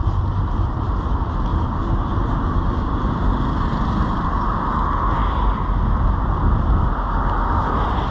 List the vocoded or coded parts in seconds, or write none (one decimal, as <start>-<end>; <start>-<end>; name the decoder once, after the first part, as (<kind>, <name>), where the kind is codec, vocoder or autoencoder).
1.5-4.7 (vocoder, BigVGAN v2)